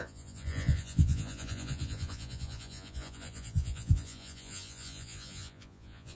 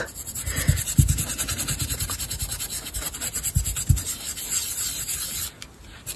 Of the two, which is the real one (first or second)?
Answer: second